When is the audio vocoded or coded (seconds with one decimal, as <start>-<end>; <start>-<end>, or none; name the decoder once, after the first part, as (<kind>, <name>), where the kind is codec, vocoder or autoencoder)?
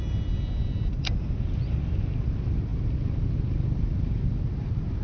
none